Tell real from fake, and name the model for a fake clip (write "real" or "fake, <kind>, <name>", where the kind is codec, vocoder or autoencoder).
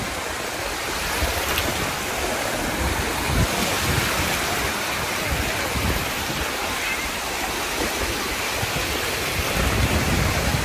real